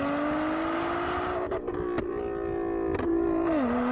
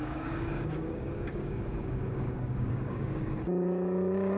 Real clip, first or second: first